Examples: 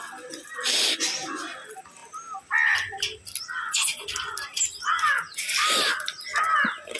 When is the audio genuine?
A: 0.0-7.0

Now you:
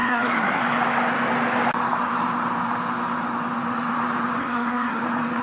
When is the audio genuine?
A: 0.6-4.4; 5.0-5.4

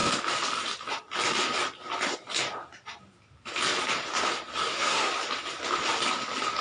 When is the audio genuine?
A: 0.0-4.6; 5.1-6.6

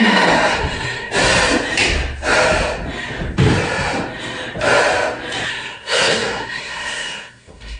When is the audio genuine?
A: 0.0-0.5; 1.1-5.5

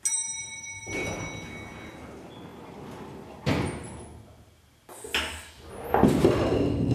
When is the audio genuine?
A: 0.0-6.9

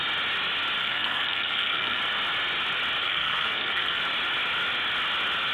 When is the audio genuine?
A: 0.0-0.8; 2.0-3.0; 4.0-5.5

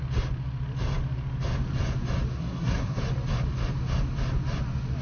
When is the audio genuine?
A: 0.0-2.3; 3.0-5.0

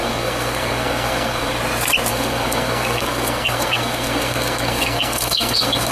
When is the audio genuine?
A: 1.6-2.1